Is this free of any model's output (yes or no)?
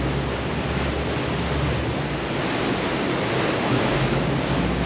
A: yes